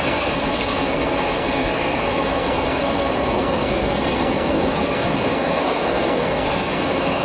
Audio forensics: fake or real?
fake